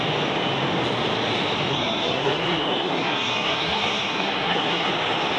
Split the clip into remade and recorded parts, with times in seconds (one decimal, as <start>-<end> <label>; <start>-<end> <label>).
0.0-1.7 recorded; 1.7-4.9 remade; 4.9-5.4 recorded